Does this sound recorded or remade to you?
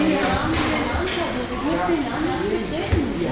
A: recorded